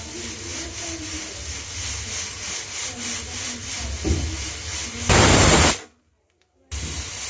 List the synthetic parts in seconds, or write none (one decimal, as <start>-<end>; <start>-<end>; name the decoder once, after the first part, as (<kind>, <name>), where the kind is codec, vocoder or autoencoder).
none